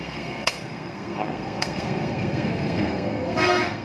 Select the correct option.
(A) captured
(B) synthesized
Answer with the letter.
B